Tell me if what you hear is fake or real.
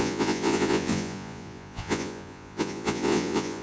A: fake